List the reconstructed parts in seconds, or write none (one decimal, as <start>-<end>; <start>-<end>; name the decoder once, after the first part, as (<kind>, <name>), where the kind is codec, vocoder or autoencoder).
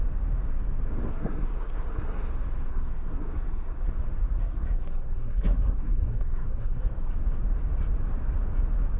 1.1-2.3 (codec, SNAC); 2.7-3.9; 4.4-7.1